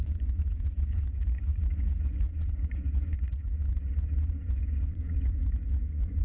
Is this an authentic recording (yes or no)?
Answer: no